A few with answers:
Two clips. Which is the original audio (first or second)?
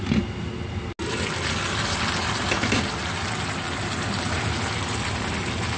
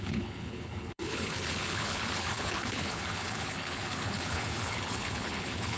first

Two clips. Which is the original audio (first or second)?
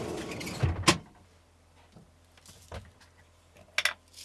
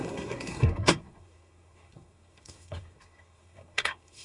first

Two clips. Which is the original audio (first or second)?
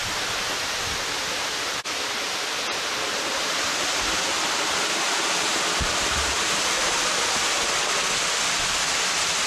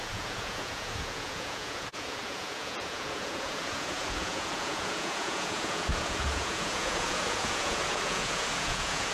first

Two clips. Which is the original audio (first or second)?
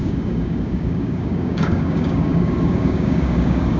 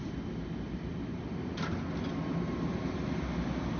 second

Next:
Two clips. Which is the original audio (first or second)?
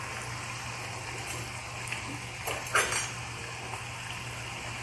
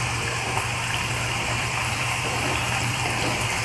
first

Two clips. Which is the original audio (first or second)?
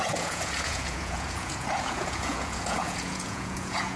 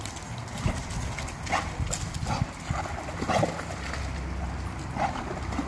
second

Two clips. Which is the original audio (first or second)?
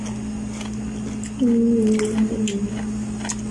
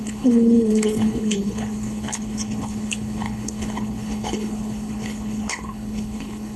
first